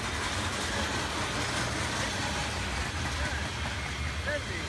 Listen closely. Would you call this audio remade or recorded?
recorded